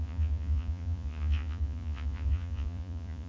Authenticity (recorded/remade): remade